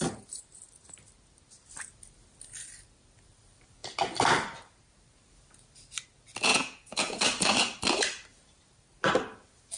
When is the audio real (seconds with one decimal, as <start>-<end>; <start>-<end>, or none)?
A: 0.0-6.5; 7.1-9.8